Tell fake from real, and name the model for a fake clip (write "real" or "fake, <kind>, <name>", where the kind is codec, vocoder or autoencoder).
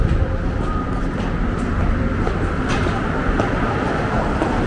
real